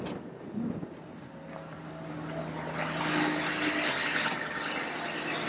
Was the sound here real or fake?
real